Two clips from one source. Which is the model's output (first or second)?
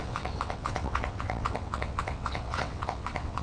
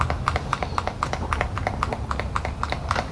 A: first